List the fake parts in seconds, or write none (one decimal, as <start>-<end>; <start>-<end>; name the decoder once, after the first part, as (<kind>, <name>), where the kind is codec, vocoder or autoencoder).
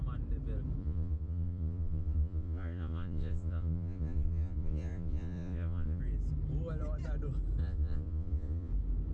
0.8-6.0 (vocoder, Vocos); 7.6-8.7